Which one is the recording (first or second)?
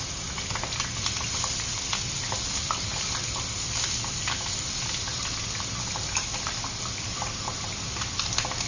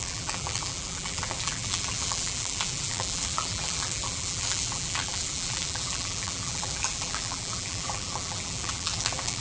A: first